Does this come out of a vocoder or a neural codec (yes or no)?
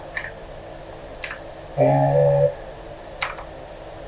no